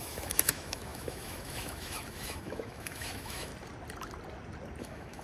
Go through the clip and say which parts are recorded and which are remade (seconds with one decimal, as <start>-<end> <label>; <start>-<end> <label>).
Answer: 0.0-3.5 remade; 3.5-4.8 recorded; 4.8-5.2 remade